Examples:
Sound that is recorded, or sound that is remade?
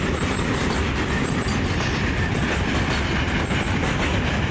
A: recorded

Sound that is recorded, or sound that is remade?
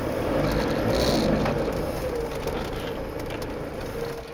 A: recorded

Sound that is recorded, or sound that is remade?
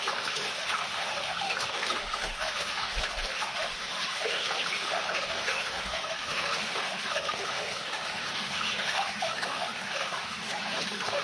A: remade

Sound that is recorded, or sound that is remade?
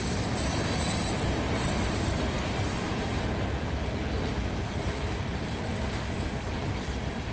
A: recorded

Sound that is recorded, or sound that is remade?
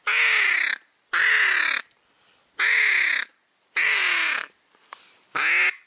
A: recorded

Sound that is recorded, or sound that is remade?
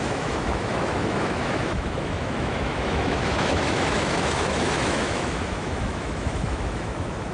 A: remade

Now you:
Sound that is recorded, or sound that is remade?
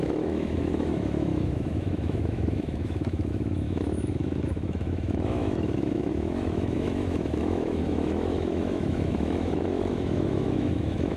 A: remade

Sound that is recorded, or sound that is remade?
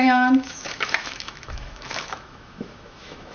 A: remade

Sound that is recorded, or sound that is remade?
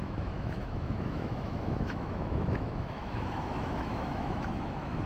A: remade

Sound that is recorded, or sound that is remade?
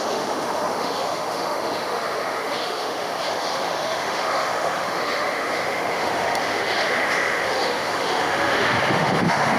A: remade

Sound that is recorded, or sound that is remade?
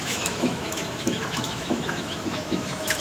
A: remade